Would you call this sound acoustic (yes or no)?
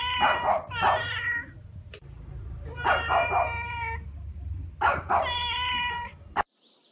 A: no